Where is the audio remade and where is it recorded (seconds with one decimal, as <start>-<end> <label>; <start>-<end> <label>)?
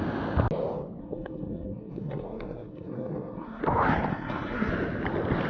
0.0-1.0 recorded; 1.0-3.6 remade; 3.6-4.1 recorded; 4.1-4.7 remade; 4.7-5.5 recorded